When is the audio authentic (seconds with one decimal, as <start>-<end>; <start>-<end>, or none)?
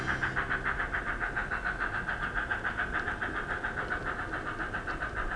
0.0-5.4